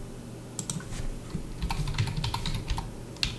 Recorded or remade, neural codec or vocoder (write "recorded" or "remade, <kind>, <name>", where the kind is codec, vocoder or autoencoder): recorded